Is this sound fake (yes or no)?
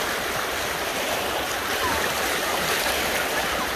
yes